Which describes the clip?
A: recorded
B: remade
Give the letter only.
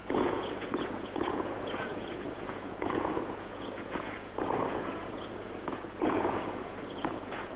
B